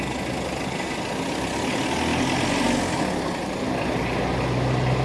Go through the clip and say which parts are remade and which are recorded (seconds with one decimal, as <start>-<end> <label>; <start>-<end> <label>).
0.0-5.0 recorded